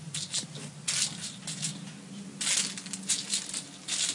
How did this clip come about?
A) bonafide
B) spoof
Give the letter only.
A